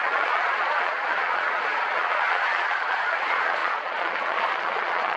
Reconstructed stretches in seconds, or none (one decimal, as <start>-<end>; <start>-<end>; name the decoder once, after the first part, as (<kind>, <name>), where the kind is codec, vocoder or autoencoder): 0.0-5.2 (vocoder, Vocos)